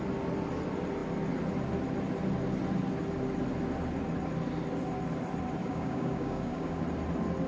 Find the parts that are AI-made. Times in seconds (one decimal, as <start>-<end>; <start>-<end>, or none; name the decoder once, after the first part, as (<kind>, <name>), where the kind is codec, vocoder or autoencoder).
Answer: 5.6-6.8 (codec, DAC)

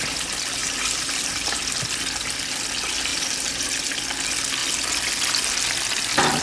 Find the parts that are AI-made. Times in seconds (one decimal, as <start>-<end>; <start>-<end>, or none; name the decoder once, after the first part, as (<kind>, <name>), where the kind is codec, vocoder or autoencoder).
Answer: 0.6-1.6 (vocoder, BigVGAN v2); 3.1-3.9

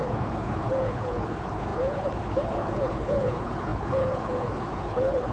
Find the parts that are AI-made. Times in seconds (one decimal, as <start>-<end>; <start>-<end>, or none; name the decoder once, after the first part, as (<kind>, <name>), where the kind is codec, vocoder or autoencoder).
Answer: 0.0-5.3 (codec, HILCodec)